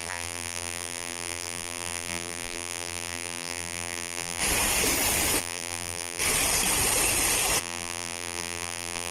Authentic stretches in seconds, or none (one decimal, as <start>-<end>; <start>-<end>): 4.4-5.4; 6.2-7.6